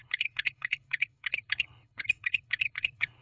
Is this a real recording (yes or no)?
no